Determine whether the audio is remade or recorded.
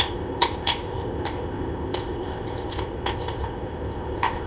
remade